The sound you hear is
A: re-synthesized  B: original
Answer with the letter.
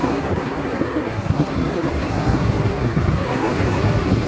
A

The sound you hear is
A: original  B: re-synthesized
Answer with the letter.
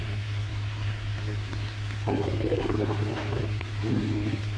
B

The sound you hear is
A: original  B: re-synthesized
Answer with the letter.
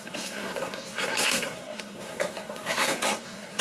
B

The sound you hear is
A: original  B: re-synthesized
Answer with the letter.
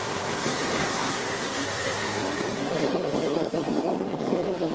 B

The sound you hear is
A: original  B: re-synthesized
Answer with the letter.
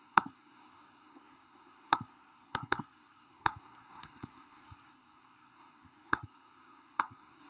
B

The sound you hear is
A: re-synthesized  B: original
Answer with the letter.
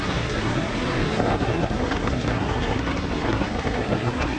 A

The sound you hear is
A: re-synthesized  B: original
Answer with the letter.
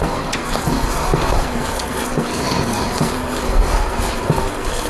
A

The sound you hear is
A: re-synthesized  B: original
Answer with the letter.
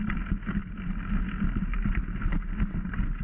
B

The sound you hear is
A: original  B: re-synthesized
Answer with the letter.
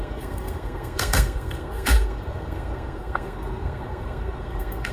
B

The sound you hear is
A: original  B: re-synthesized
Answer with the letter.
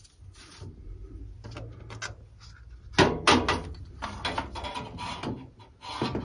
A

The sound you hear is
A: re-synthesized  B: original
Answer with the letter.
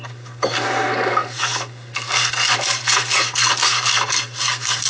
A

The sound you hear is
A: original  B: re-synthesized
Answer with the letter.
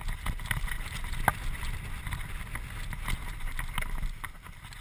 A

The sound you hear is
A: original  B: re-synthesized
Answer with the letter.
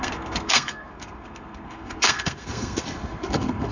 B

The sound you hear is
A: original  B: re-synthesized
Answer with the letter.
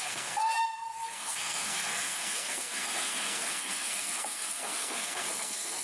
B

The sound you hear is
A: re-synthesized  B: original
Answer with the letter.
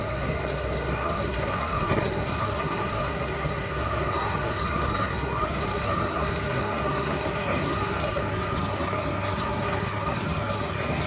A